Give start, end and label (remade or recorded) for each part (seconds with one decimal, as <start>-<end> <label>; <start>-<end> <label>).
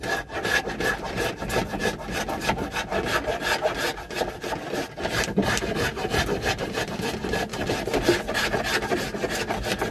0.0-5.4 recorded; 5.4-7.0 remade; 7.0-7.5 recorded; 7.5-8.6 remade; 8.6-9.9 recorded